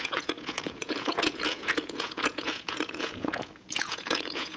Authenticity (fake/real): fake